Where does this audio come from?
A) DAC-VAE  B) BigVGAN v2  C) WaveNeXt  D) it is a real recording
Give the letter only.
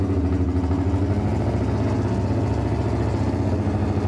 D